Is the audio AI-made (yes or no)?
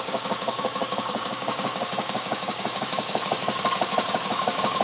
yes